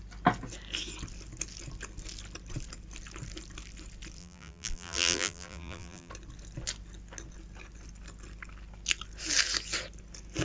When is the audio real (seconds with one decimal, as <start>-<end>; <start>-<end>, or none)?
0.0-4.2; 6.1-10.4